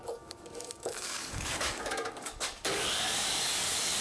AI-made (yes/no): yes